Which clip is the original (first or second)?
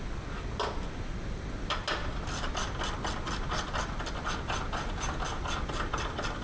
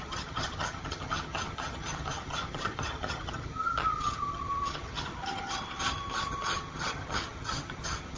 first